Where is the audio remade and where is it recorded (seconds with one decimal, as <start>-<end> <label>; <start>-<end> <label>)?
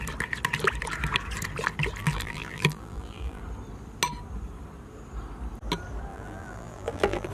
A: 0.0-2.0 recorded; 2.0-3.4 remade; 3.4-6.1 recorded; 6.1-7.3 remade